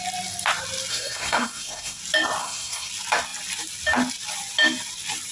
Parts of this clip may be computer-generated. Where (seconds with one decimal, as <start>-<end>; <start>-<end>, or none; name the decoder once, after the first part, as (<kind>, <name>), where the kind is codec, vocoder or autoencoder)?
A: 0.9-2.0 (codec, SNAC); 2.4-2.9